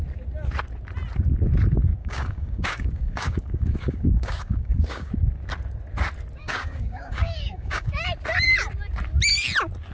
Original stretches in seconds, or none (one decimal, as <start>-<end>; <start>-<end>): 0.0-2.0; 5.1-6.4; 8.0-9.9